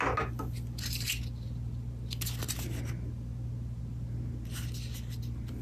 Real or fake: real